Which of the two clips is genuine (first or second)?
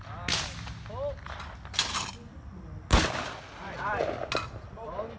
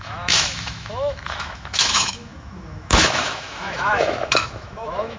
first